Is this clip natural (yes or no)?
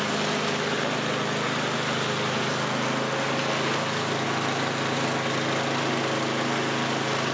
yes